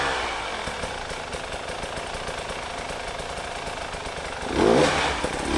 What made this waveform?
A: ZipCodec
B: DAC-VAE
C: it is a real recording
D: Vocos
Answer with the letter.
C